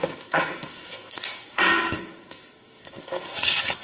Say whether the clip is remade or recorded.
remade